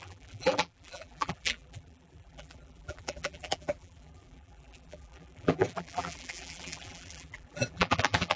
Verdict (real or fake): fake